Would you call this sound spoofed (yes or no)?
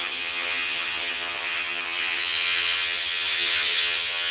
yes